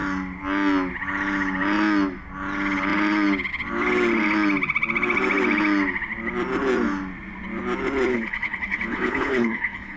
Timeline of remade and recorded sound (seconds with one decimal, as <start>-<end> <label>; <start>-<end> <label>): 0.0-8.1 recorded; 8.1-10.0 remade